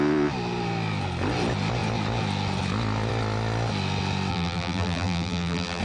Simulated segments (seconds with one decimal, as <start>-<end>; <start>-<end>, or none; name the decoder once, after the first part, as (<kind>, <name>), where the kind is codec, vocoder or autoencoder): 4.3-5.8 (vocoder, BigVGAN v2)